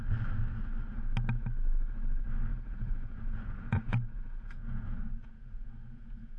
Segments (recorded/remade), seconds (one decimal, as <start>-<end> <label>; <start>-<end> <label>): 0.0-2.5 recorded; 2.5-6.4 remade